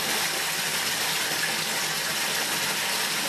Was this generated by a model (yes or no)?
no